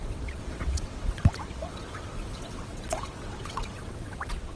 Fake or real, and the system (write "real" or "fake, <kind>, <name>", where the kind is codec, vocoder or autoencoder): fake, vocoder, WaveNeXt